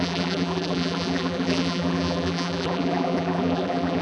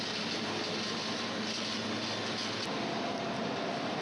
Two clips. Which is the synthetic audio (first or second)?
first